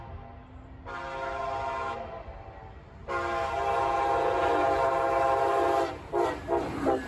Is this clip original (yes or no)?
yes